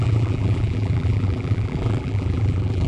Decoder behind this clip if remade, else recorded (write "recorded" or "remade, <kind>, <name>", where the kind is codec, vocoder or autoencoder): remade, vocoder, BigVGAN v2